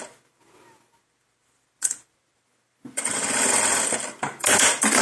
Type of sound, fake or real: real